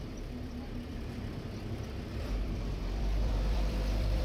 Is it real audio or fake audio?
fake